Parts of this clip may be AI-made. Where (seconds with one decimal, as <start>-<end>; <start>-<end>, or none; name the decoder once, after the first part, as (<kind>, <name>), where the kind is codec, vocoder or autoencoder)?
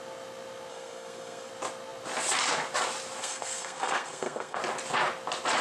0.7-1.5 (codec, SNAC); 3.2-4.6